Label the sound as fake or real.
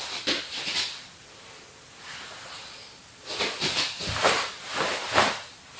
real